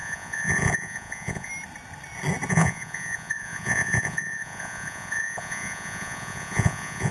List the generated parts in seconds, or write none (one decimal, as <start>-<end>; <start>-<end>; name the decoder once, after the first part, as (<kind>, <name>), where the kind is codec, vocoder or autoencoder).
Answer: 0.0-1.5 (vocoder, Vocos); 2.5-7.1